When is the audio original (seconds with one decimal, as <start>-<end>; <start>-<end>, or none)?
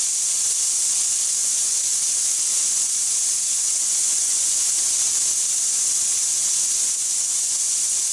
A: 0.0-1.4; 4.7-6.2